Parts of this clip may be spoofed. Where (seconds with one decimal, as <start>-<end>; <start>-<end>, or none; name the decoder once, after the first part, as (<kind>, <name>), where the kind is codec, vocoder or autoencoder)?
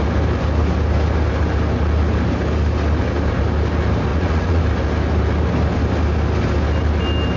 4.1-4.6 (vocoder, Vocos)